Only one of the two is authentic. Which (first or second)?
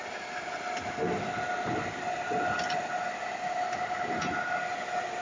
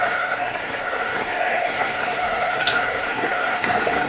first